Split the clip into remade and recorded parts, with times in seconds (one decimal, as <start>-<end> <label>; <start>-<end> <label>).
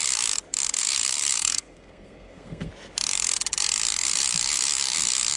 0.0-0.8 recorded; 0.8-2.7 remade; 2.7-5.4 recorded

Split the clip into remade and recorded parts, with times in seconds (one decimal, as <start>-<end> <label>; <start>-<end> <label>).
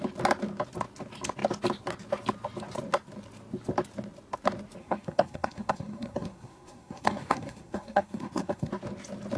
0.0-4.8 recorded; 4.8-8.7 remade; 8.7-9.4 recorded